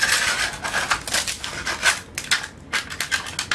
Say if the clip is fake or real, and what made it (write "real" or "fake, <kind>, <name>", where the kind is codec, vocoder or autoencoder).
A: real